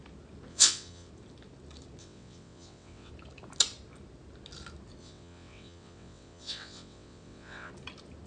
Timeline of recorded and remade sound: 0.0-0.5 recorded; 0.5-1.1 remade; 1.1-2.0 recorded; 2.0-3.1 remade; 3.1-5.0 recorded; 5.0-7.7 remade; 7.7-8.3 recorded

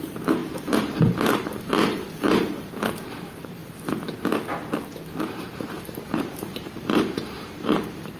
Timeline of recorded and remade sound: 0.0-3.6 remade; 3.6-5.3 recorded; 5.3-8.2 remade

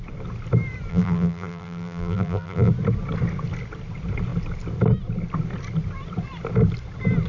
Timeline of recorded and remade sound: 0.0-0.9 recorded; 0.9-2.7 remade; 2.7-7.3 recorded

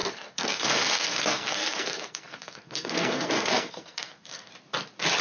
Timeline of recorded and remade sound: 0.0-4.5 remade; 4.5-5.2 recorded

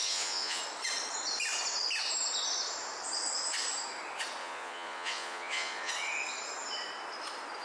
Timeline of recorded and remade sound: 0.0-0.6 remade; 0.6-4.4 recorded; 4.4-5.9 remade; 5.9-7.6 recorded